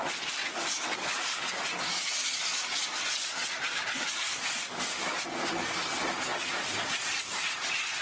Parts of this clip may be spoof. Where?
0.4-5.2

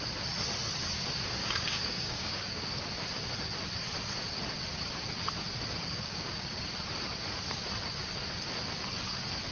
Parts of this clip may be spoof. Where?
1.4-2.8; 5.8-6.7